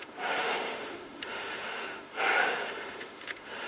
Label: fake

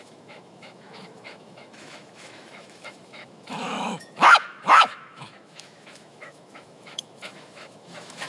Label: fake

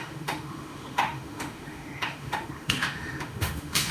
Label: fake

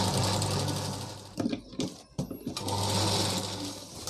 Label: real